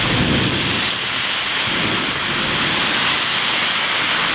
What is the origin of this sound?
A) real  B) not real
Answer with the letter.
A